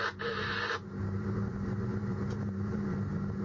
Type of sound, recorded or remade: remade